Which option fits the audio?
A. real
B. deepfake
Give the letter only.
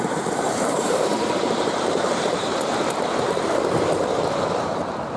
B